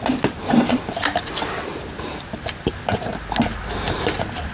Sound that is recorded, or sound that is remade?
recorded